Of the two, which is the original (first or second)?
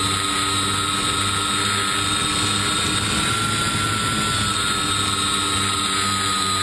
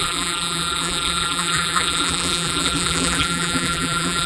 first